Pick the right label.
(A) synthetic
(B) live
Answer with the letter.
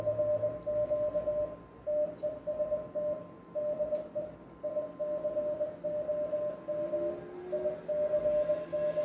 B